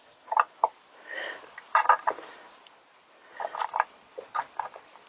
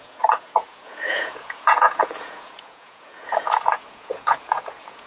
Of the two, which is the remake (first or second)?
second